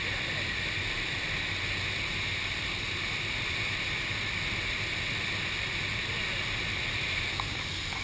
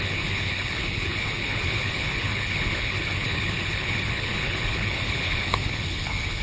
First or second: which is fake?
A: second